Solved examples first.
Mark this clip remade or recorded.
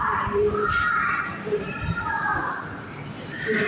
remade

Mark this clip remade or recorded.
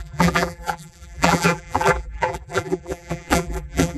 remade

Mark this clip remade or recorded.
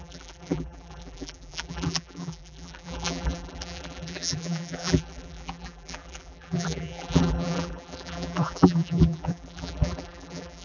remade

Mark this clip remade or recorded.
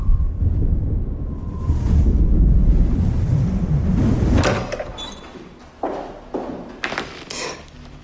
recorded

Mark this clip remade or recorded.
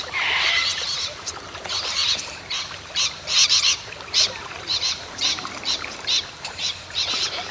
remade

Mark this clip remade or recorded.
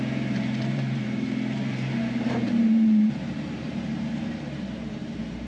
remade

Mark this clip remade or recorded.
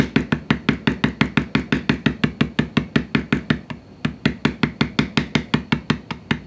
recorded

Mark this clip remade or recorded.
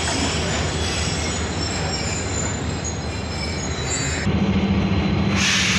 recorded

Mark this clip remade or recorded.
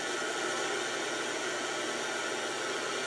recorded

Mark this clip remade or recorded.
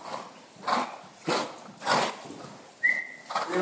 recorded